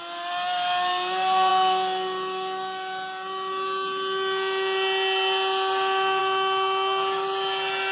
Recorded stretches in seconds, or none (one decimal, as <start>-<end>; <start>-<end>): 0.0-7.9